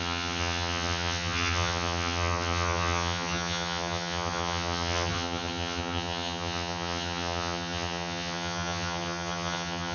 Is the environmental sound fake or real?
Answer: fake